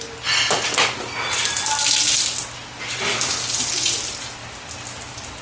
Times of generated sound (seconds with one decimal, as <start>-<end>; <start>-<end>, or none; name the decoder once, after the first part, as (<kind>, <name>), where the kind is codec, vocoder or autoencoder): none